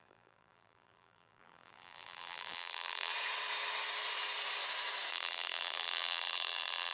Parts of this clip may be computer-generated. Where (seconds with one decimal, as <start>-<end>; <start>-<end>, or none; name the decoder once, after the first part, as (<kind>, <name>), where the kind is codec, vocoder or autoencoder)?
0.0-3.1 (vocoder, BigVGAN v2); 5.1-6.9